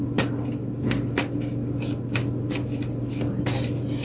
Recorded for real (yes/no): yes